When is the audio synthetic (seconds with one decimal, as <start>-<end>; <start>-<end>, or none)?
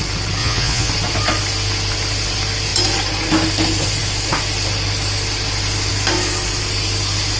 0.4-0.9